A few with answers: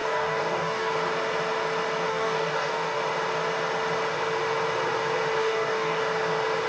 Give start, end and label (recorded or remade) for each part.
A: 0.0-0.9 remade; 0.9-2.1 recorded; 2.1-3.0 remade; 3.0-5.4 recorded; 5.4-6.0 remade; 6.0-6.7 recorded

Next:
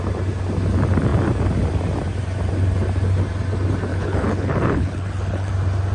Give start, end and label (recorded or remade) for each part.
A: 0.0-3.9 recorded; 3.9-5.5 remade; 5.5-5.9 recorded

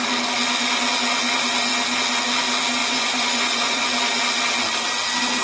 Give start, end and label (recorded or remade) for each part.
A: 0.0-2.8 recorded; 2.8-3.8 remade; 3.8-5.4 recorded

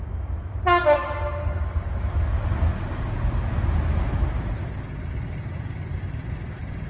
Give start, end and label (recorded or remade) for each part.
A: 0.0-1.0 recorded; 1.0-2.0 remade; 2.0-6.9 recorded